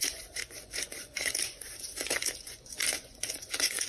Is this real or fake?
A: fake